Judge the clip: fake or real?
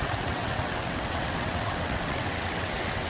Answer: fake